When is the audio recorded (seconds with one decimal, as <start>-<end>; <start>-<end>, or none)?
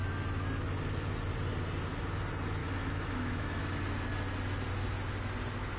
0.0-2.6; 3.6-5.8